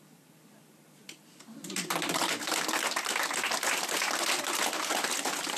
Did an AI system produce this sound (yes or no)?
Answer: yes